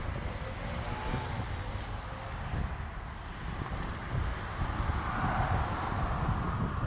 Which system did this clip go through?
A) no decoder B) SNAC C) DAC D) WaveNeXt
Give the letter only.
A